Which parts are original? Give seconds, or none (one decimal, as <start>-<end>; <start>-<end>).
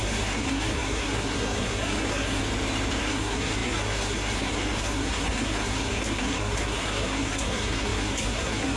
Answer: 2.4-3.0